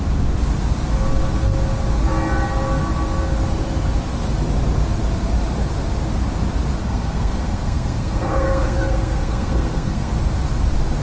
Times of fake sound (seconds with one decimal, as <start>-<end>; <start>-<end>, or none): 6.8-10.1

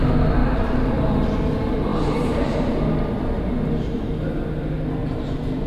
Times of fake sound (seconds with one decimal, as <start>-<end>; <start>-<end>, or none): 0.4-0.9; 1.9-2.6; 5.0-5.7

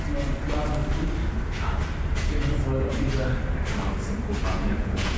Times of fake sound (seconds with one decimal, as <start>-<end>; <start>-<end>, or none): 4.4-5.2

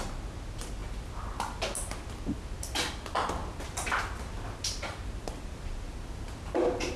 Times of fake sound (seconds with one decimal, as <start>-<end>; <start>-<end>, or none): none